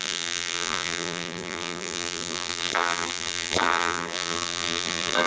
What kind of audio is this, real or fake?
fake